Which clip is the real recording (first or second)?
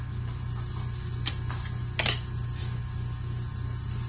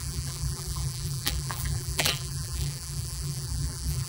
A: first